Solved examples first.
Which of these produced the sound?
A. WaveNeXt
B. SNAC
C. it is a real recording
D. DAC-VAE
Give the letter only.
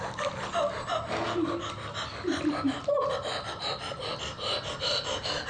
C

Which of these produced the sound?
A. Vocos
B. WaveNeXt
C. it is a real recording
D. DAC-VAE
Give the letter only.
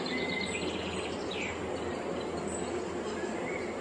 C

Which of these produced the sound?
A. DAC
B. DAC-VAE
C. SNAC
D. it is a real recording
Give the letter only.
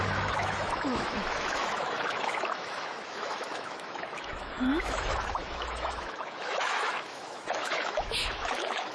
B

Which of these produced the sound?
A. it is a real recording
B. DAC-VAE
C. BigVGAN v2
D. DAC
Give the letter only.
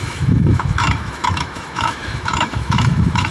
B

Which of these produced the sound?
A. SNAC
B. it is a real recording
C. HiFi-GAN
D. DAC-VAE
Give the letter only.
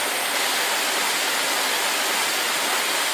B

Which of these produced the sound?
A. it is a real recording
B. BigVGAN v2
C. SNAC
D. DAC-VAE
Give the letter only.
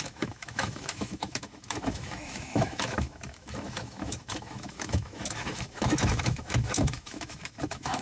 D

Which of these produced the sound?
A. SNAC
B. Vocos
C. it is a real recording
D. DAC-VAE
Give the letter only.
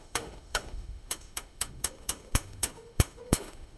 D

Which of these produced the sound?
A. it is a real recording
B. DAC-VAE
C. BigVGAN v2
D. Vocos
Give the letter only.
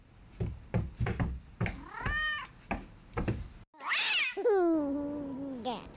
A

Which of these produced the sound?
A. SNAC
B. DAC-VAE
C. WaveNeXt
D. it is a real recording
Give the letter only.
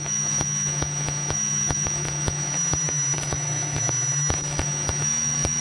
B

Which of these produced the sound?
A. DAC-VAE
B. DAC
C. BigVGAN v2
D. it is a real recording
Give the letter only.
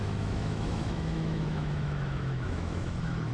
A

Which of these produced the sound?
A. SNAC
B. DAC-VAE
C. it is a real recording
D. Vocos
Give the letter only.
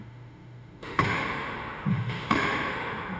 B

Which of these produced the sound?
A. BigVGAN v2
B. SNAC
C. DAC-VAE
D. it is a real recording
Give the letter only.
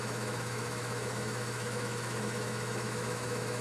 C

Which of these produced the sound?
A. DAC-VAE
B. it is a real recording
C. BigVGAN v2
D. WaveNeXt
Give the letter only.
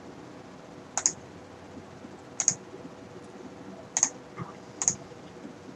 B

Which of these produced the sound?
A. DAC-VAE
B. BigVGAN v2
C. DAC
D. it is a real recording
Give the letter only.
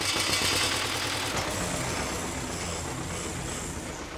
D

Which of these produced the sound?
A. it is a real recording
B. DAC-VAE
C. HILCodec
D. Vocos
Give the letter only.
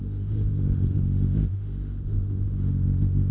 B